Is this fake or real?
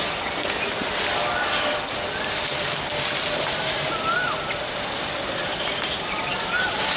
real